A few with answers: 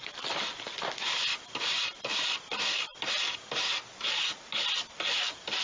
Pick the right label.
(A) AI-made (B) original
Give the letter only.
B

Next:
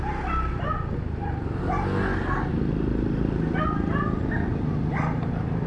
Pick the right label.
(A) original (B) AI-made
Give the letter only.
A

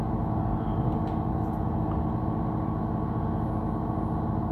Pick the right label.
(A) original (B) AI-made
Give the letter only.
A